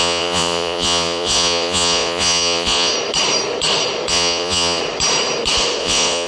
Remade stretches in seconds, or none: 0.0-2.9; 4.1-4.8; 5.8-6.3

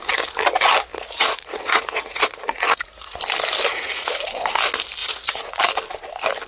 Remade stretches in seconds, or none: 0.9-3.2; 3.7-4.2; 5.0-5.6